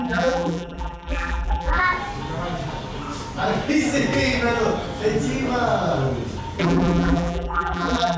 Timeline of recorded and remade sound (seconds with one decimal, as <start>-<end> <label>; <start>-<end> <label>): 0.0-1.8 remade; 1.8-6.6 recorded; 6.6-8.2 remade